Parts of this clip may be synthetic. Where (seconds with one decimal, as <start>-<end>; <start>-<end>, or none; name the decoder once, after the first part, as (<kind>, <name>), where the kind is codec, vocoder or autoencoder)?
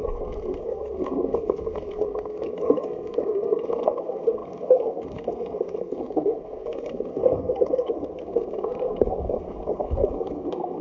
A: 0.0-10.8 (codec, SNAC)